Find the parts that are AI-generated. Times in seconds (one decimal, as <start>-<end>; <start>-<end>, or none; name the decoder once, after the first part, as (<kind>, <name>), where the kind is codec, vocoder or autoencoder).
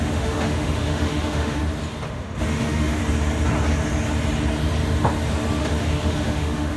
0.0-1.6 (autoencoder, DAC-VAE); 2.1-3.0; 5.6-6.8